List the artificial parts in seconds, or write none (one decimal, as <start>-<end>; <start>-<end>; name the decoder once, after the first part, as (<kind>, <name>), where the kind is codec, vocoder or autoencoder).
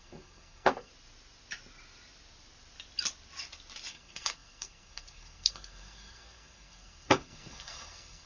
0.0-0.9 (codec, SNAC); 3.9-8.3